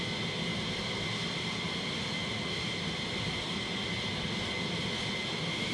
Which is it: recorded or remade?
recorded